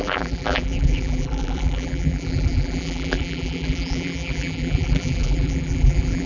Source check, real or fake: fake